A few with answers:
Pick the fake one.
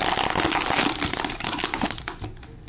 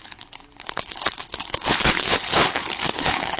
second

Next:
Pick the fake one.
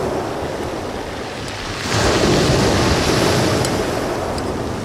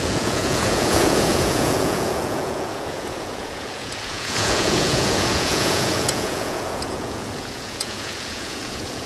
second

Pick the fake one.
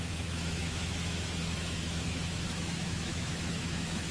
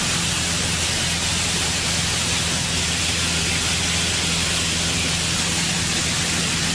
first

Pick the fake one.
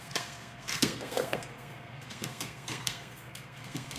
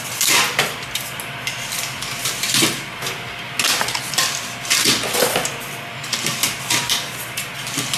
first